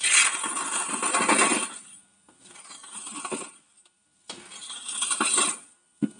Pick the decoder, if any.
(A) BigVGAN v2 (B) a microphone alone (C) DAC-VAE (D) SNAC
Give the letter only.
B